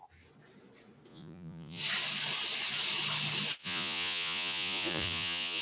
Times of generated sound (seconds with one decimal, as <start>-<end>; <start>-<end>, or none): 1.1-1.8; 3.6-5.6